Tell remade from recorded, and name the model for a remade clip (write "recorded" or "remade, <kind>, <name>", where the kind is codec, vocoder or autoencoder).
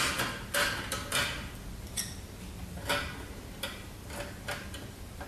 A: recorded